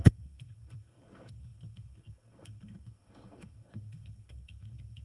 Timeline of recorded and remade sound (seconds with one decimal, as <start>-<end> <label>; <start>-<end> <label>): 0.0-5.0 remade